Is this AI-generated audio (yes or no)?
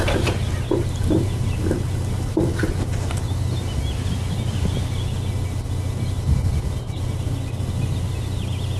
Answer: no